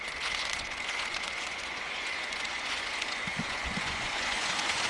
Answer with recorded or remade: remade